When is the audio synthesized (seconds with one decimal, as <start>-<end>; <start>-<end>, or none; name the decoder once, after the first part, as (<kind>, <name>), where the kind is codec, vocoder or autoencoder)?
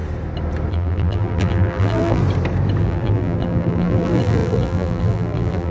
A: 0.7-2.2 (vocoder, BigVGAN v2); 2.8-5.7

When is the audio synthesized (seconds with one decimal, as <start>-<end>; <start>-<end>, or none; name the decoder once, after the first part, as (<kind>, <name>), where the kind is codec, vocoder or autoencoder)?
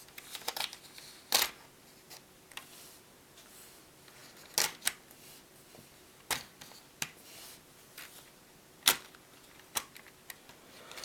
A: none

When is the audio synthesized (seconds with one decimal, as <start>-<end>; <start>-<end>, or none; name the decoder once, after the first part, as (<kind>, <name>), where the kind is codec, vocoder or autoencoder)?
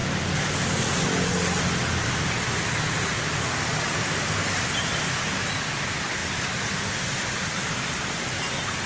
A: none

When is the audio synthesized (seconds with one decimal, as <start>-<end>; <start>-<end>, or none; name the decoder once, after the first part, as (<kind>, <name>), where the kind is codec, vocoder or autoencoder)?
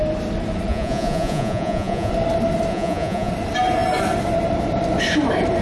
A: 0.7-2.1 (vocoder, Vocos); 2.7-3.3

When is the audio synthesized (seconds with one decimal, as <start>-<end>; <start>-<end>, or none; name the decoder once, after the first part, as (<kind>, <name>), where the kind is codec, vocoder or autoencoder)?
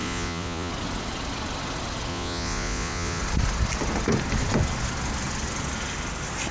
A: 0.0-0.7 (vocoder, Vocos); 2.1-3.2